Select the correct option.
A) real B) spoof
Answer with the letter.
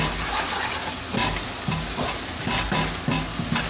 A